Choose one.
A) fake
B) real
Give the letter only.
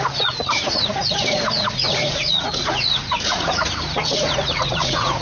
A